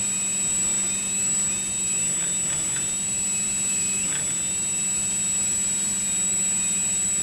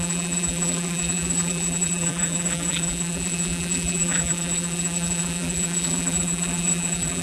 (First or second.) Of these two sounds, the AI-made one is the second